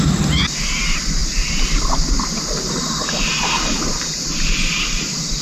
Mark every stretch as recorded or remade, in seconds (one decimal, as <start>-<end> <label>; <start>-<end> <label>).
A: 0.0-5.4 recorded

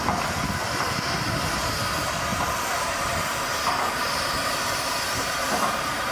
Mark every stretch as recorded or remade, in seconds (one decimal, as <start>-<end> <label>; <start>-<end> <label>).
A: 0.0-2.3 recorded; 2.3-6.1 remade

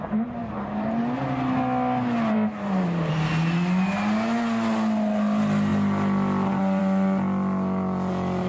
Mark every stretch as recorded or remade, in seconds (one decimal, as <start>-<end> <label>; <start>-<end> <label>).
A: 0.0-0.4 recorded; 0.4-1.3 remade; 1.3-2.5 recorded; 2.5-3.1 remade; 3.1-8.5 recorded

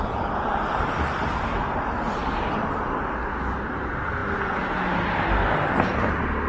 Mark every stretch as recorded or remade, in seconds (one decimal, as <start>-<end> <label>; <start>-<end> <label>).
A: 0.0-2.2 recorded; 2.2-3.0 remade; 3.0-6.5 recorded

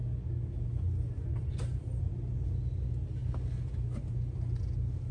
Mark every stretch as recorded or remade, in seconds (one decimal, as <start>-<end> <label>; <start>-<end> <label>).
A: 0.0-1.3 recorded; 1.3-2.0 remade; 2.0-5.1 recorded